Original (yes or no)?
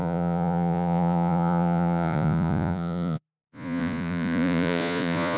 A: no